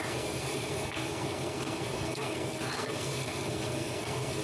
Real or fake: fake